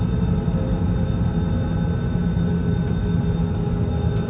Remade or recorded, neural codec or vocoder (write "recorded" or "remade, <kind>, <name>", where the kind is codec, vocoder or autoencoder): recorded